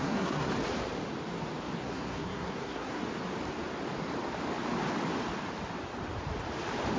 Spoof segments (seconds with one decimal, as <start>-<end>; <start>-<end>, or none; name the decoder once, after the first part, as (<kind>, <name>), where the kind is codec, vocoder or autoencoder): 0.0-0.5 (codec, SNAC); 1.8-3.0